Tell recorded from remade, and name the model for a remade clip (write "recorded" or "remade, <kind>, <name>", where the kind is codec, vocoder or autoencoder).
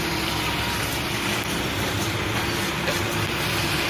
recorded